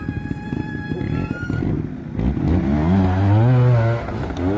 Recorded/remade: recorded